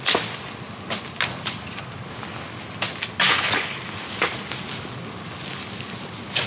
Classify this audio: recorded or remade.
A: recorded